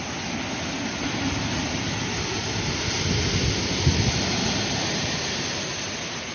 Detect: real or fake real